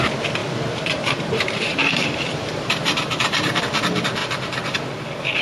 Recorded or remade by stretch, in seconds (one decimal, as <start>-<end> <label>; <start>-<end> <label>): 0.0-0.4 recorded; 0.4-3.6 remade; 3.6-4.2 recorded; 4.2-4.8 remade; 4.8-5.4 recorded